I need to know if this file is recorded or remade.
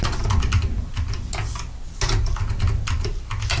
recorded